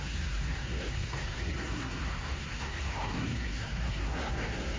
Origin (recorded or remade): remade